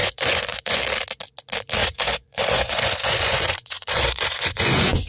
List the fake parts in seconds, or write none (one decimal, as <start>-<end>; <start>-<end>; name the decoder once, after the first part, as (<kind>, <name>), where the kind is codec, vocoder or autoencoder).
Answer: 0.0-0.8 (vocoder, Vocos); 1.8-5.1

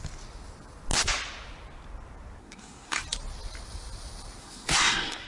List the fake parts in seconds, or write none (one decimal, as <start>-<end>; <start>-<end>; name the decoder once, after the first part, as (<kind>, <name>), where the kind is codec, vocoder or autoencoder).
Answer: 2.4-3.0 (codec, SNAC); 4.4-5.3

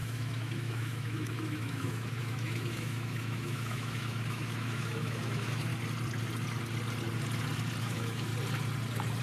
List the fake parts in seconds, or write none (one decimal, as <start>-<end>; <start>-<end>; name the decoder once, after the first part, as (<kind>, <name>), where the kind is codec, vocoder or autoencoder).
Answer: 0.0-5.7 (autoencoder, DAC-VAE); 7.8-8.3

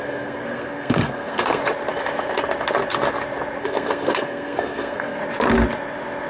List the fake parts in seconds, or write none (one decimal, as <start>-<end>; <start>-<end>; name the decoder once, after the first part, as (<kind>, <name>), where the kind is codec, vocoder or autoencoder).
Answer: 0.0-1.6 (codec, SNAC); 3.6-5.2

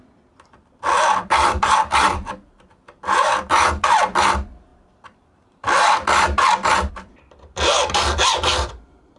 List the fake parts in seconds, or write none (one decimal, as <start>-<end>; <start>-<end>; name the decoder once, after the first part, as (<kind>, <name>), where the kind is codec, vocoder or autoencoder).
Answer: 0.0-9.2 (vocoder, BigVGAN v2)

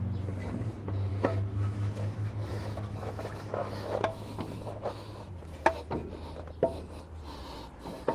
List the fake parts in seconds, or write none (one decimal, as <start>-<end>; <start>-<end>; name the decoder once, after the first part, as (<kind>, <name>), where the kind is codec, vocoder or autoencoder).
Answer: 1.1-5.3 (autoencoder, DAC-VAE)

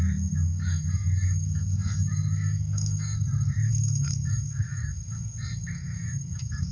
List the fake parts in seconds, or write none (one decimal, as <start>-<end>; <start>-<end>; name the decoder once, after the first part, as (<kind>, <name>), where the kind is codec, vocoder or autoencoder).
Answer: 0.0-6.7 (codec, SNAC)